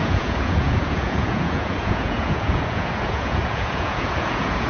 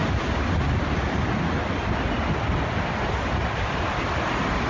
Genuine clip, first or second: second